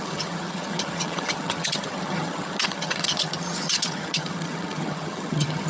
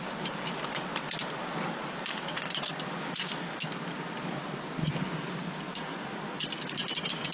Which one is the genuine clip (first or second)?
second